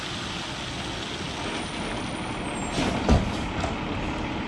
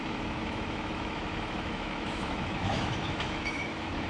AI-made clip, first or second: second